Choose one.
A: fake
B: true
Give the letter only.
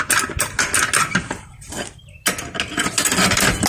B